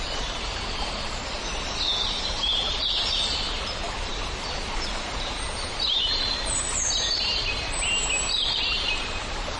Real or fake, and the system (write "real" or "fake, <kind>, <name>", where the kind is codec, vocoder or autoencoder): fake, vocoder, BigVGAN v2